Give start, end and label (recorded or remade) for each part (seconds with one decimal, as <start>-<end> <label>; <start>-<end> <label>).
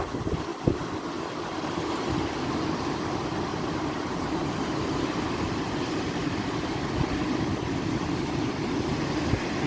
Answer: 0.0-3.5 recorded; 3.5-4.8 remade; 4.8-9.7 recorded